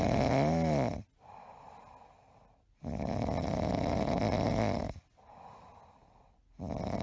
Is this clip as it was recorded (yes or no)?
yes